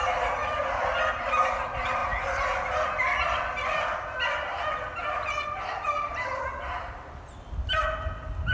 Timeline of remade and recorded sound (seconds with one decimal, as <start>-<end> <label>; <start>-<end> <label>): 0.0-8.5 recorded